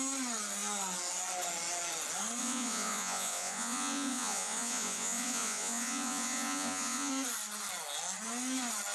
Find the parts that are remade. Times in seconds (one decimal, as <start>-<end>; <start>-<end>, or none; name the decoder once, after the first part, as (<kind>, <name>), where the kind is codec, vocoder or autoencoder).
2.4-7.1 (vocoder, Vocos)